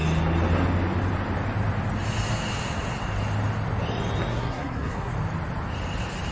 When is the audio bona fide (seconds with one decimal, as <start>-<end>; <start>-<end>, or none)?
0.0-4.3; 5.1-6.3